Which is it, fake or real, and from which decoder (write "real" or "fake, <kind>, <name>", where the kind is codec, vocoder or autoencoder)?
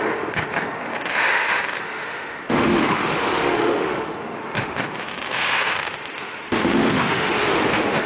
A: fake, autoencoder, DAC-VAE